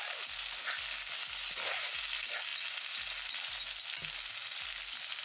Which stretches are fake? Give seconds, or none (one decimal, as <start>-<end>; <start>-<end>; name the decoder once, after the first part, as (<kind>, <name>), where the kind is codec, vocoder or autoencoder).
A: none